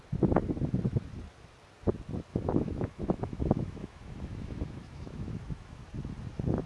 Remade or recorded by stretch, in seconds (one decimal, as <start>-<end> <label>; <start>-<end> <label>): 0.0-2.3 recorded; 2.3-5.8 remade; 5.8-6.7 recorded